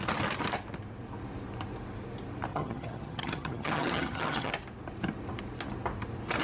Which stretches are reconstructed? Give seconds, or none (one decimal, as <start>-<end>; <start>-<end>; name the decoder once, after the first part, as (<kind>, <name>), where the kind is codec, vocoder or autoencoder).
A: 2.5-4.5 (vocoder, HiFi-GAN)